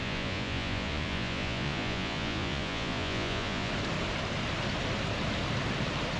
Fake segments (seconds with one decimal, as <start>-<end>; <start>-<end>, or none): 0.0-3.7